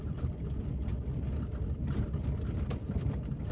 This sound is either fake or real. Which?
real